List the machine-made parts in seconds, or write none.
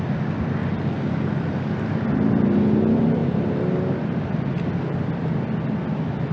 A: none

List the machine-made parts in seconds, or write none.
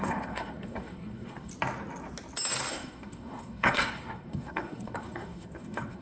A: 0.0-1.5 (codec, SNAC); 2.7-6.0